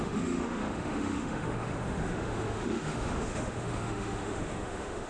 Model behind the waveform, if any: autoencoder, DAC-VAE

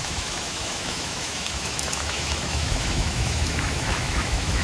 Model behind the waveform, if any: autoencoder, DAC-VAE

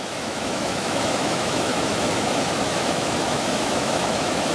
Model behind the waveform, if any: autoencoder, DAC-VAE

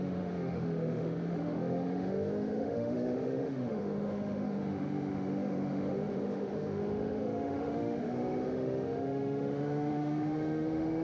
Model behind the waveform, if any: autoencoder, DAC-VAE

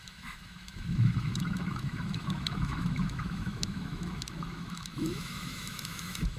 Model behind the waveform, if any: autoencoder, DAC-VAE